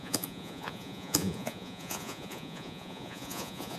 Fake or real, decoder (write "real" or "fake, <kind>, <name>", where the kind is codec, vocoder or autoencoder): fake, vocoder, Vocos